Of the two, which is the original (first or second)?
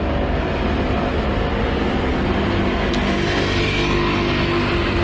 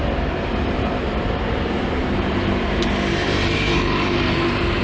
first